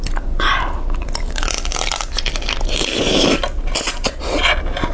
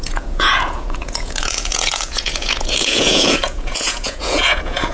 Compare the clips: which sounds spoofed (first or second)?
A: second